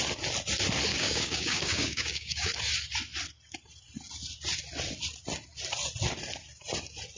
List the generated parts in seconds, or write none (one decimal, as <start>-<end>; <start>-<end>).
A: 0.9-2.5